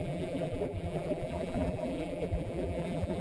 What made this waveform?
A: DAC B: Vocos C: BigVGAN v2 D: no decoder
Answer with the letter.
C